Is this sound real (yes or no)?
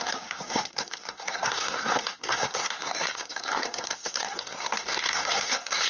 no